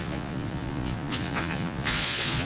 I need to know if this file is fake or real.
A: fake